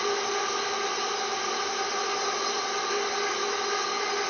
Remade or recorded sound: recorded